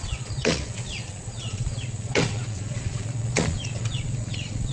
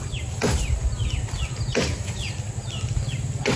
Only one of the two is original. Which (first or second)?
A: second